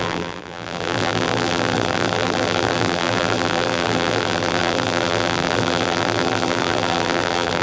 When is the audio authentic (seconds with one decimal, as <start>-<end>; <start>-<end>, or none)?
none